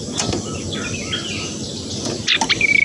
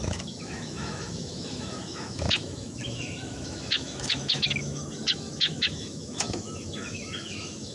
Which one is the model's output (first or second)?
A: second